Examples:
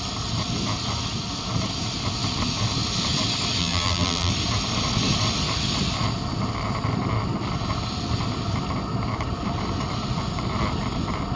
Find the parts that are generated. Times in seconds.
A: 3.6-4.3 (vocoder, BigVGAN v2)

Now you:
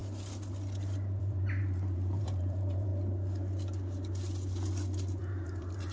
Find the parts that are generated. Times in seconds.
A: 1.2-2.9 (vocoder, BigVGAN v2); 5.2-5.9

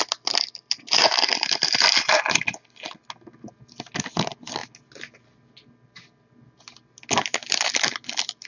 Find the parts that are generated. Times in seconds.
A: 1.3-2.2 (vocoder, BigVGAN v2)

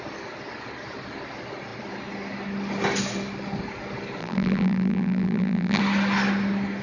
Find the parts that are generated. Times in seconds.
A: 4.2-5.8 (vocoder, BigVGAN v2)

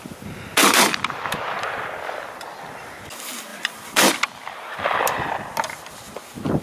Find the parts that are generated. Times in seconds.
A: 3.5-4.1 (vocoder, BigVGAN v2); 4.7-5.3

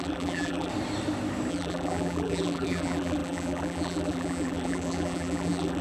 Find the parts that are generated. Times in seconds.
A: 0.0-0.7 (vocoder, BigVGAN v2); 1.5-5.8

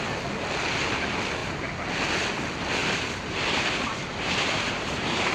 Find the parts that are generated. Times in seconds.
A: 2.8-5.3 (vocoder, BigVGAN v2)

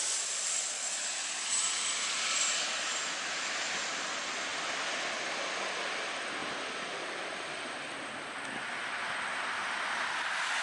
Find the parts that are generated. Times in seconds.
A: 1.7-3.1 (vocoder, BigVGAN v2); 9.3-10.6